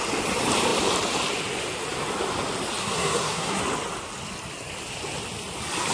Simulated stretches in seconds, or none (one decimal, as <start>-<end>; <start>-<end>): 2.8-3.6